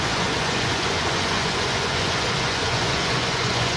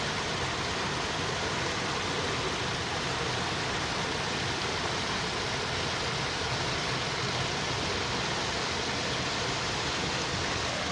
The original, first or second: second